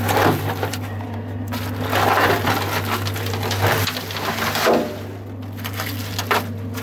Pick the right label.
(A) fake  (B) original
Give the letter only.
B